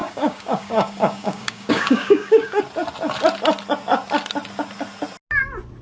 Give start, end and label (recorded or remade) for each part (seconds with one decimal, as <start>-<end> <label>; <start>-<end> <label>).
0.0-2.6 remade; 2.6-5.8 recorded